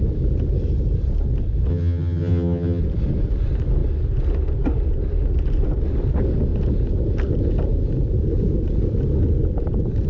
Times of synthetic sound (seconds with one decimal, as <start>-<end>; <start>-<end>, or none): 1.7-2.8